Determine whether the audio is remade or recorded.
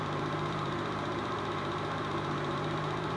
remade